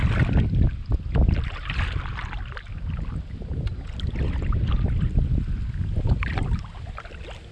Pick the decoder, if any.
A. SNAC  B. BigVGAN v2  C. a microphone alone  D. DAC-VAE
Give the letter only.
C